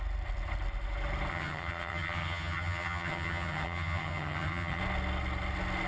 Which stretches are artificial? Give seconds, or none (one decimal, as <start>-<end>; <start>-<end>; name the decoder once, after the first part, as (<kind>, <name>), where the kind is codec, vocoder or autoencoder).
1.3-4.8 (vocoder, HiFi-GAN)